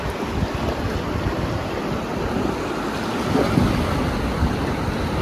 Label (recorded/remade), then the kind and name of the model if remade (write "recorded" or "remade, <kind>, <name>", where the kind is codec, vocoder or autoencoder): recorded